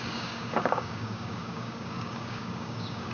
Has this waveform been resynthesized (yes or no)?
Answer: yes